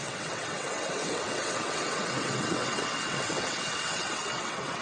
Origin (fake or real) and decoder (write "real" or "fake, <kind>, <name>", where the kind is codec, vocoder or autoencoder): fake, vocoder, WaveNeXt